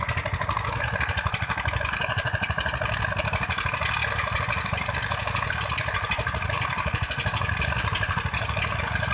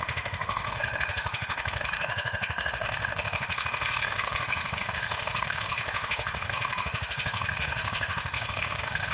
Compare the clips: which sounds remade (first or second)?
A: second